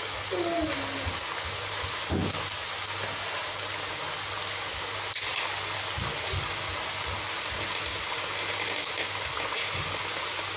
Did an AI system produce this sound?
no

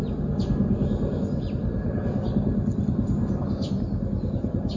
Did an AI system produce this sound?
no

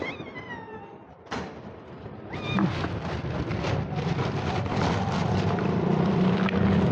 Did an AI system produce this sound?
yes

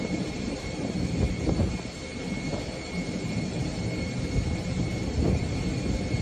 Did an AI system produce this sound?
yes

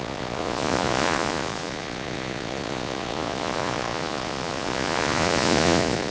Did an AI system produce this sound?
yes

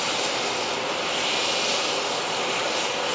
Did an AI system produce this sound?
no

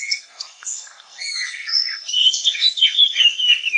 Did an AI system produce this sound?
yes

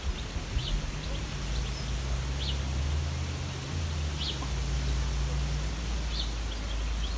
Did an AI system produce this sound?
no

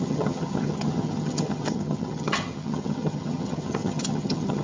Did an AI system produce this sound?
yes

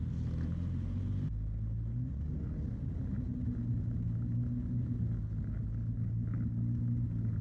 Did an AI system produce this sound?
no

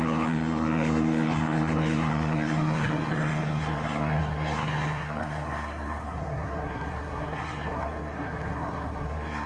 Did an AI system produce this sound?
yes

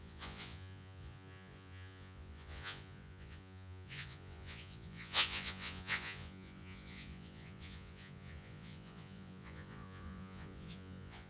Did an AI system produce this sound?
yes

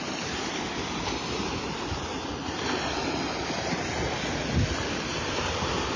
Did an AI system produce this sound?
no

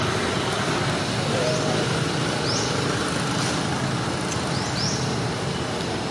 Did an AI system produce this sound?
no